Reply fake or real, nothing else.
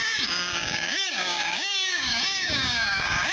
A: fake